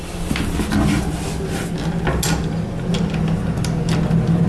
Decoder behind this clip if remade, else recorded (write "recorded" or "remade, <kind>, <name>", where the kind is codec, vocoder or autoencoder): recorded